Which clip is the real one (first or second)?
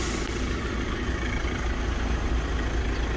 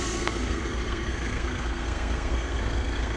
first